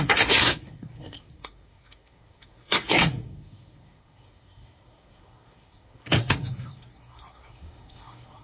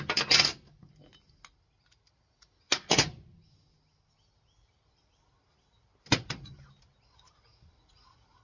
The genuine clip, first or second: second